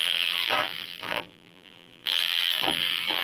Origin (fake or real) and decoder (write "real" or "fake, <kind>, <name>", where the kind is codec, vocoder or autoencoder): fake, vocoder, BigVGAN v2